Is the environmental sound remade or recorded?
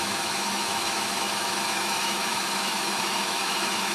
remade